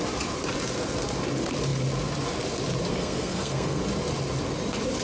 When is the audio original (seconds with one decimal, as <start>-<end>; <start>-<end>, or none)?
0.0-2.9; 3.8-5.0